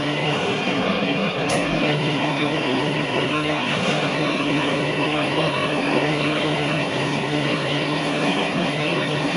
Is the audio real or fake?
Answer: fake